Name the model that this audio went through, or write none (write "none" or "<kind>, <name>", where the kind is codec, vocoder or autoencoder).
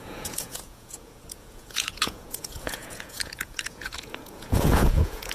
vocoder, Vocos